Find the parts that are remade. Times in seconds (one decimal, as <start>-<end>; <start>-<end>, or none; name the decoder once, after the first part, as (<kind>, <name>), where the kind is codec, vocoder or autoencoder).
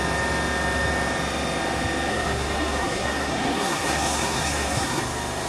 2.1-5.0 (codec, SNAC)